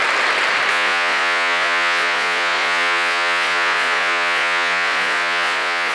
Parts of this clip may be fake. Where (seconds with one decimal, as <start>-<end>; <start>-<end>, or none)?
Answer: 0.7-5.9